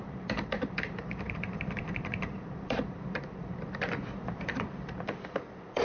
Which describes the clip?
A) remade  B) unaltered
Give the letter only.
A